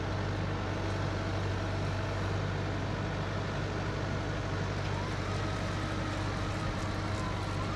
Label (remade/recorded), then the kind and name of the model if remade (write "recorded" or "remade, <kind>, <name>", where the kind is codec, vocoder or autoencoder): recorded